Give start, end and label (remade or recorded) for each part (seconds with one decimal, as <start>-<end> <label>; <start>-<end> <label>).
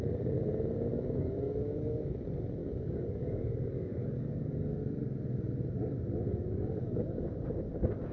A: 0.0-0.9 recorded; 0.9-2.2 remade; 2.2-2.6 recorded; 2.6-4.9 remade; 4.9-6.3 recorded; 6.3-7.3 remade; 7.3-8.1 recorded